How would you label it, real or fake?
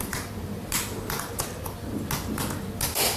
real